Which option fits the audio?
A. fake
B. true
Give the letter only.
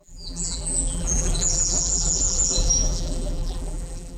A